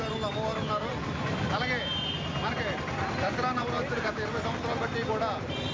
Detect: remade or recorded recorded